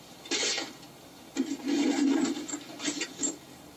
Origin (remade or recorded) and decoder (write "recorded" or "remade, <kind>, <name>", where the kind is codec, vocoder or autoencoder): recorded